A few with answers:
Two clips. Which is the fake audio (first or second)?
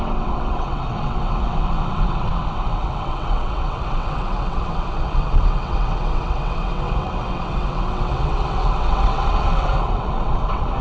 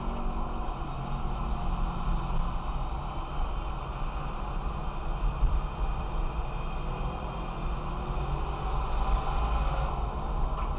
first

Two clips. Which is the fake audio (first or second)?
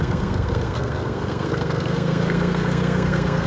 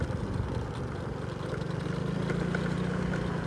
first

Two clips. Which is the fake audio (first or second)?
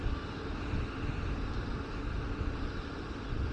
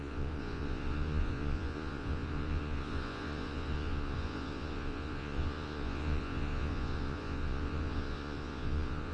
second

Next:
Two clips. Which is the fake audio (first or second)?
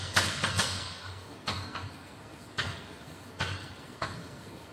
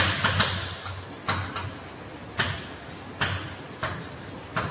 first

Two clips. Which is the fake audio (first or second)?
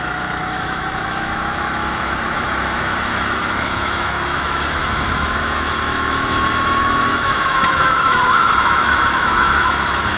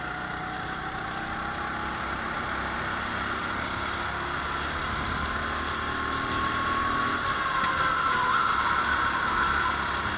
first